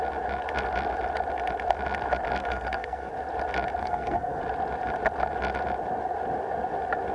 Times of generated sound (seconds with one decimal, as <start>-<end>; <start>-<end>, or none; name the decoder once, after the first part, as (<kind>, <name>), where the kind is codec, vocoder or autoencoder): 2.4-3.1 (codec, SNAC); 3.8-4.4